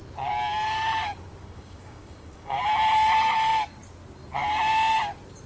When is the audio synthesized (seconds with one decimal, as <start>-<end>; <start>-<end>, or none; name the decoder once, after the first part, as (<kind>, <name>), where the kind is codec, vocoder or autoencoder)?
1.4-2.6 (codec, DAC)